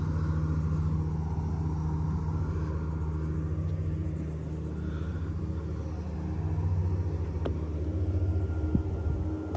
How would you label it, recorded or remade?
recorded